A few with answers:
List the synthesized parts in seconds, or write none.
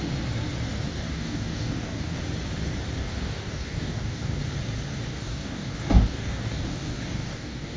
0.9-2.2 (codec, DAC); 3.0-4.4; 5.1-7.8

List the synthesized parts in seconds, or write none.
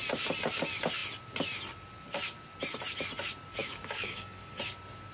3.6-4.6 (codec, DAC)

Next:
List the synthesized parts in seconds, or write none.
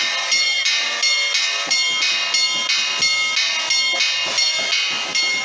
none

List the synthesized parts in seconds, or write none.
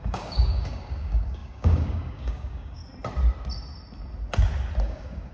0.0-2.8 (codec, DAC); 4.8-5.3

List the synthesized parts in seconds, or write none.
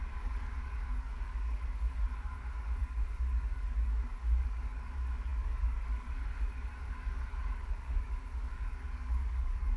0.0-9.8 (codec, DAC)